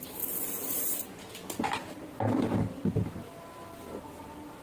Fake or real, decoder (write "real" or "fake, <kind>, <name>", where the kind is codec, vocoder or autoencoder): real